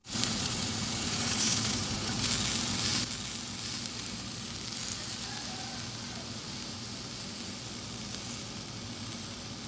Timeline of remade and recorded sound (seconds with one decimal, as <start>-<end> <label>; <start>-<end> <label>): 0.0-2.3 remade; 2.3-9.7 recorded